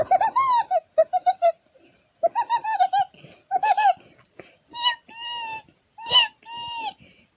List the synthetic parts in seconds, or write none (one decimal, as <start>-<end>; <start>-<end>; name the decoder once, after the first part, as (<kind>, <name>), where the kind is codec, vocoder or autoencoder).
none